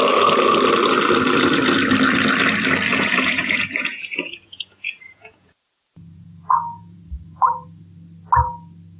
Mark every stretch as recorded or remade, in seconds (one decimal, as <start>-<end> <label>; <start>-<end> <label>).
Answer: 0.0-2.9 recorded; 2.9-7.8 remade; 7.8-9.0 recorded

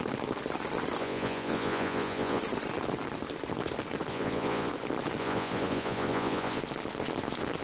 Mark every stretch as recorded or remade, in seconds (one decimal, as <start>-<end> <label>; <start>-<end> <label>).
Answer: 0.0-1.0 recorded; 1.0-2.4 remade; 2.4-4.1 recorded; 4.1-4.7 remade; 4.7-5.2 recorded; 5.2-6.6 remade; 6.6-7.6 recorded

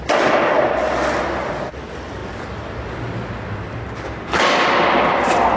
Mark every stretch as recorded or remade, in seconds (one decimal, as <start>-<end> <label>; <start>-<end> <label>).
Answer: 0.0-5.6 recorded

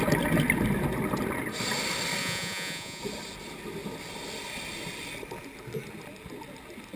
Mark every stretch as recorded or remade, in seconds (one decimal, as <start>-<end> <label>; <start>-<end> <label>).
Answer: 0.0-2.2 recorded; 2.2-3.0 remade; 3.0-7.0 recorded

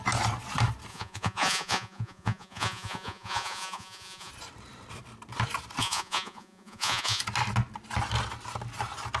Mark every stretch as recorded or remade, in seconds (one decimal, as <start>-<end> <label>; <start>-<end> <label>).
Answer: 0.0-0.9 recorded; 0.9-4.3 remade; 4.3-5.8 recorded; 5.8-7.2 remade; 7.2-9.2 recorded

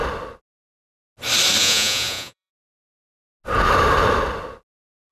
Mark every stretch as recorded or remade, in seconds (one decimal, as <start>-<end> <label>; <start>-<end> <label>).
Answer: 0.0-1.6 recorded; 1.6-2.5 remade; 2.5-5.1 recorded

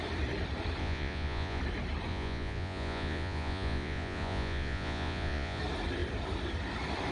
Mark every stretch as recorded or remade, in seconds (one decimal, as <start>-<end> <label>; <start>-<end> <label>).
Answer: 0.0-0.8 recorded; 0.8-1.6 remade; 1.6-2.1 recorded; 2.1-5.6 remade; 5.6-7.1 recorded